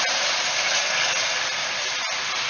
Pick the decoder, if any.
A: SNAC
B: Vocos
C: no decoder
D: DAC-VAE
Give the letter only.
C